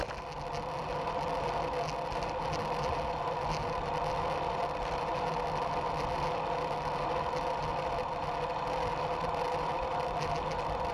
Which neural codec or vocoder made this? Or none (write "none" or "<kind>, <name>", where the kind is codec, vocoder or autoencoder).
none